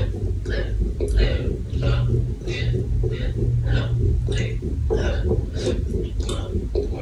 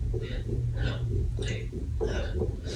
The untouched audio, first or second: first